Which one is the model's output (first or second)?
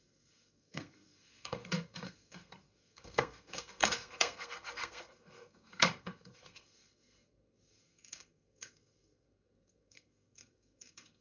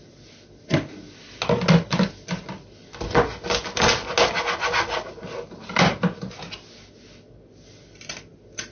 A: first